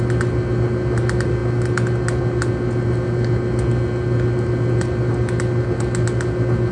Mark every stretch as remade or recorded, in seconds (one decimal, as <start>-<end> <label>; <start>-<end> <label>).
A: 0.0-6.7 recorded